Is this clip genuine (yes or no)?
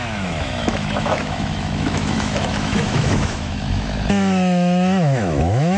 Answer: no